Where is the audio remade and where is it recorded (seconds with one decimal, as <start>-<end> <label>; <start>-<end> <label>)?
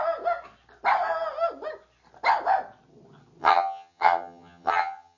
0.0-3.4 recorded; 3.4-5.2 remade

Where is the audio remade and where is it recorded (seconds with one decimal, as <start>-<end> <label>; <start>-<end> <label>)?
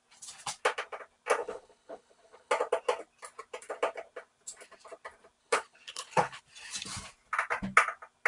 0.0-1.4 recorded; 1.4-2.5 remade; 2.5-5.4 recorded; 5.4-6.4 remade; 6.4-8.3 recorded